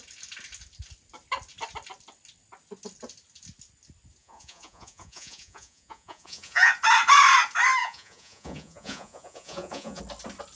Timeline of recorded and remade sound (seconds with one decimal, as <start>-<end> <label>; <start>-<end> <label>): 0.0-4.2 recorded; 4.2-6.7 remade; 6.7-7.8 recorded; 7.8-10.0 remade; 10.0-10.6 recorded